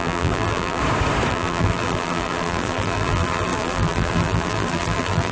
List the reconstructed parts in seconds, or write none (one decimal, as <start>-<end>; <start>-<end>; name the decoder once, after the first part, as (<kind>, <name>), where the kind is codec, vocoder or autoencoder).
0.0-0.8 (vocoder, BigVGAN v2); 1.3-5.3